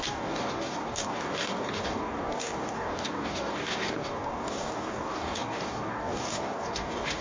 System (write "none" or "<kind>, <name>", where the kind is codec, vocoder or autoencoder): codec, DAC